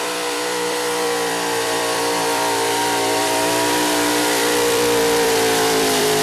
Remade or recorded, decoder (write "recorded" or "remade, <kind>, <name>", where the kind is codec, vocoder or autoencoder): remade, vocoder, BigVGAN v2